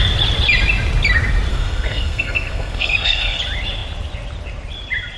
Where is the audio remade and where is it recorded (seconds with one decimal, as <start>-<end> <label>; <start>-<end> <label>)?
0.0-1.5 recorded; 1.5-3.4 remade; 3.4-5.2 recorded